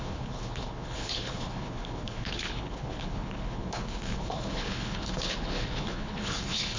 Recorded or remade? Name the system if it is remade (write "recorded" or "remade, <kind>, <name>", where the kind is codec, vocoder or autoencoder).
remade, codec, HILCodec